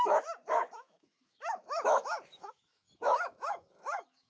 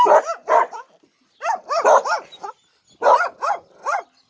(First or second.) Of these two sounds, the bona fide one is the second